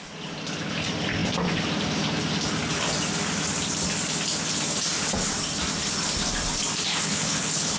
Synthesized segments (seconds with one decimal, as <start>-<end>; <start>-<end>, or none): 6.9-7.8

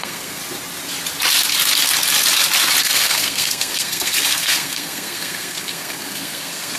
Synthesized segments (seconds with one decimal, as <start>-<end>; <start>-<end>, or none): 0.0-0.4; 2.8-6.8

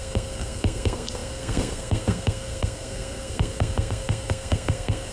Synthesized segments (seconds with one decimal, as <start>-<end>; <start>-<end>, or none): 0.0-5.1

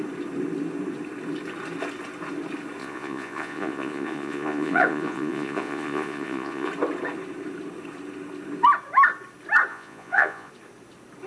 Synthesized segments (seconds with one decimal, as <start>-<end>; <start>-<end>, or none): 2.8-6.7; 9.7-10.5

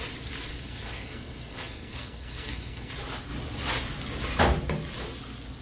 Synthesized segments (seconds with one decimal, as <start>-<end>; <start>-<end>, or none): 0.5-2.9

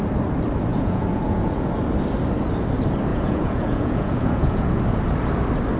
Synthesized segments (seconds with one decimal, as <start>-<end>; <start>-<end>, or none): 0.7-1.7; 3.1-4.8